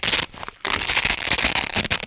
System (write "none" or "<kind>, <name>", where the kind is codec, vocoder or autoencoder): none